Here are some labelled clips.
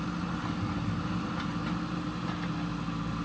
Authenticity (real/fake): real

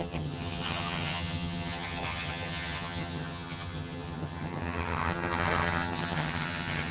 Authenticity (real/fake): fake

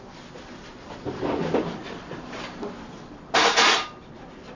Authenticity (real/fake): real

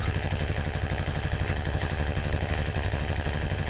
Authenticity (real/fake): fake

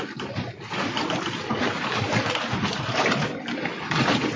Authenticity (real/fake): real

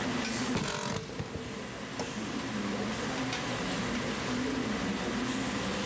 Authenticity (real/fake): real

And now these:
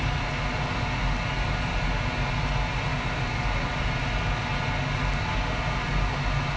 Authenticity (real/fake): real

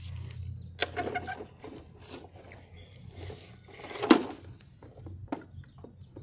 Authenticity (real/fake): real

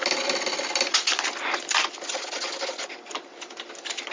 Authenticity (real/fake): real